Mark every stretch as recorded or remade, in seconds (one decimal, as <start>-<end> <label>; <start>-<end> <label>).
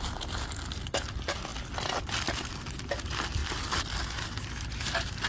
0.0-5.3 recorded